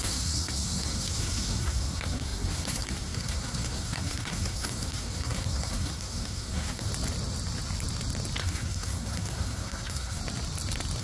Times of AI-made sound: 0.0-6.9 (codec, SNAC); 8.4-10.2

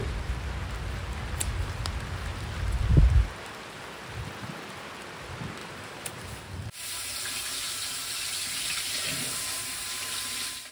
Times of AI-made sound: 5.6-6.2 (vocoder, BigVGAN v2)

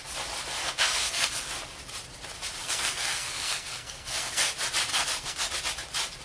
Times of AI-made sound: 0.6-1.5 (codec, SNAC); 2.6-4.5; 4.9-5.5

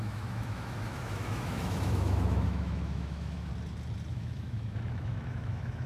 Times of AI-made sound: 0.0-3.5 (autoencoder, DAC-VAE); 4.1-5.9

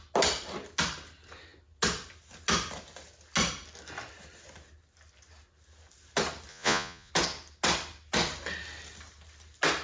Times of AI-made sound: 6.5-7.1 (vocoder, Vocos)

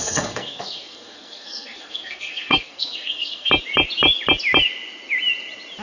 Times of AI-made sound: 0.0-3.5 (codec, SNAC)

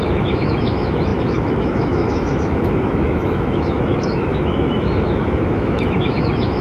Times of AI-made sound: 0.0-6.6 (autoencoder, DAC-VAE)

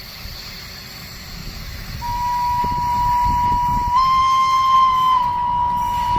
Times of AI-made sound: 1.4-2.6 (autoencoder, DAC-VAE)